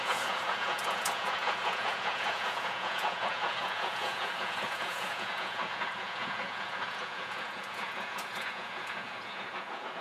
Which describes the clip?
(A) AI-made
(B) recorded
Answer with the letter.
A